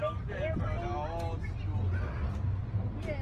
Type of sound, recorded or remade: recorded